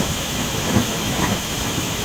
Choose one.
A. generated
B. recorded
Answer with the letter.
A